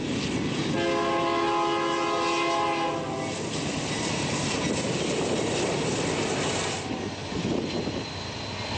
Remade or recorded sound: recorded